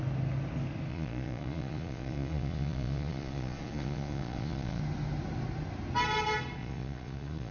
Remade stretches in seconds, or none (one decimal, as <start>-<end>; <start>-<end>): 0.9-4.8; 6.6-7.5